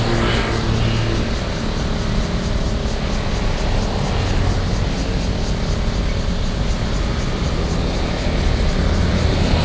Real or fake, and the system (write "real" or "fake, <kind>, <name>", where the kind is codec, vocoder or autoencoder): real